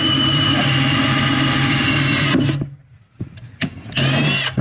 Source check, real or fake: fake